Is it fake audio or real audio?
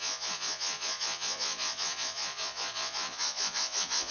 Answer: fake